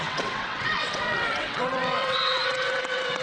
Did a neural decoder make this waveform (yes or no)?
yes